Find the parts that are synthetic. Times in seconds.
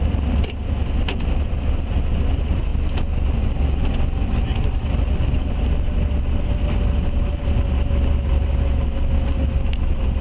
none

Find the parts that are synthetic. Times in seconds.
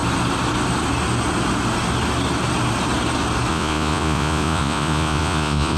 3.5-5.8